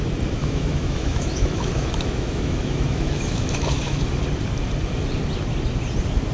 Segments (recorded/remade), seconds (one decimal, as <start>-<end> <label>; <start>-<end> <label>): 0.0-0.4 recorded; 0.4-4.2 remade; 4.2-6.3 recorded